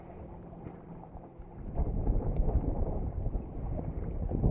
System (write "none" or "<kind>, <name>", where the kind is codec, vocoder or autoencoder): vocoder, BigVGAN v2